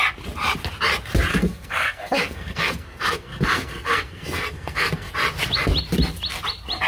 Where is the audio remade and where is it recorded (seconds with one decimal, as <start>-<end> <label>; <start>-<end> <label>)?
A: 0.0-1.3 recorded; 1.3-5.1 remade; 5.1-6.9 recorded